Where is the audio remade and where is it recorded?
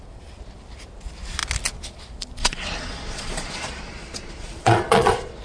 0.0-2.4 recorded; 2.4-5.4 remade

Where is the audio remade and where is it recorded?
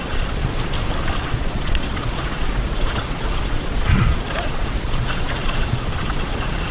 0.0-0.4 remade; 0.4-1.3 recorded; 1.3-6.7 remade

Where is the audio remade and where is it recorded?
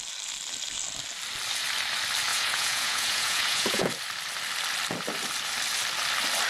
0.0-2.3 recorded; 2.3-3.9 remade; 3.9-6.5 recorded